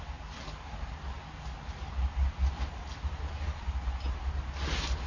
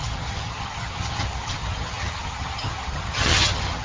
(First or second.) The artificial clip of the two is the second